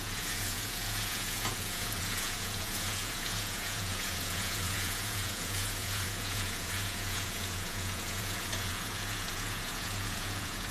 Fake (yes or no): yes